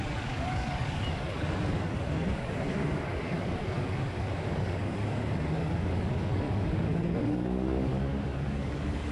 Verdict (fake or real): fake